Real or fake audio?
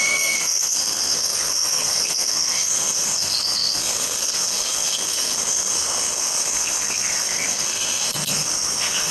fake